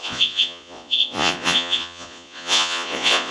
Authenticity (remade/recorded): remade